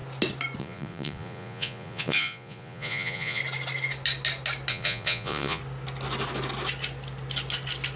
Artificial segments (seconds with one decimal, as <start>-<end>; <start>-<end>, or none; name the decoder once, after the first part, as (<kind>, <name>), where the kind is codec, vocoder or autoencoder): 0.6-3.4 (vocoder, Vocos); 4.7-5.6